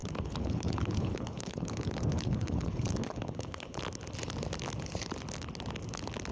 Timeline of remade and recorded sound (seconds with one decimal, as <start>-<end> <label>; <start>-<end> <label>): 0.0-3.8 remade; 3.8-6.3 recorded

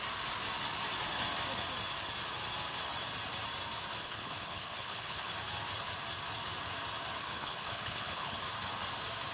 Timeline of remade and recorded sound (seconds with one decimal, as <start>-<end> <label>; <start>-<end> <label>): 0.0-4.0 recorded; 4.0-5.3 remade; 5.3-7.2 recorded; 7.2-8.4 remade; 8.4-9.3 recorded

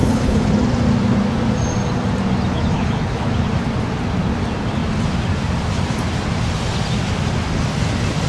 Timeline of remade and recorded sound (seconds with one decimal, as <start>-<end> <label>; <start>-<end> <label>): 0.0-0.5 remade; 0.5-2.5 recorded; 2.5-3.3 remade; 3.3-8.3 recorded

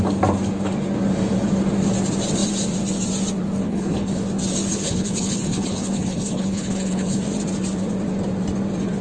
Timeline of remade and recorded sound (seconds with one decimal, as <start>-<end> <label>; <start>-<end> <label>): 0.0-3.6 recorded; 3.6-4.1 remade; 4.1-4.7 recorded; 4.7-7.2 remade; 7.2-9.0 recorded

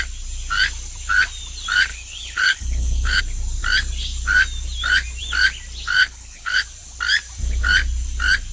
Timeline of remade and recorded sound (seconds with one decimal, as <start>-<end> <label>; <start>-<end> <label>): 0.0-1.9 recorded; 1.9-3.2 remade; 3.2-6.0 recorded; 6.0-6.6 remade; 6.6-8.5 recorded

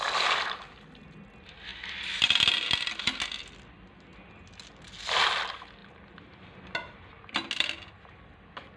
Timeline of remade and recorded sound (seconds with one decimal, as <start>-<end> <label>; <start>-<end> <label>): 0.0-8.8 recorded